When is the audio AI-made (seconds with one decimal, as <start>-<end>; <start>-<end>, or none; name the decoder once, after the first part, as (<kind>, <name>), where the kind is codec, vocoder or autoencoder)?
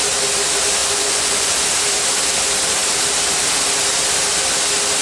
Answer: 0.8-1.5 (vocoder, Vocos)